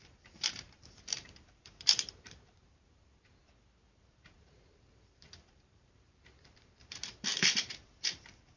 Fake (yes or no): yes